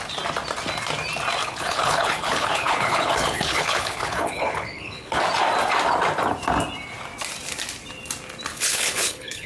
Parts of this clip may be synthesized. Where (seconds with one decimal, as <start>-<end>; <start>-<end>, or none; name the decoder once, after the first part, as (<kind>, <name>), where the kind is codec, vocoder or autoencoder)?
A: 1.4-5.2 (codec, HILCodec); 8.5-9.5